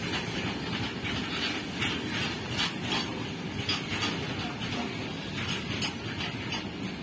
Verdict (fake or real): real